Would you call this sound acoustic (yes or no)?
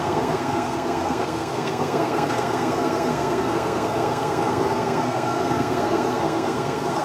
no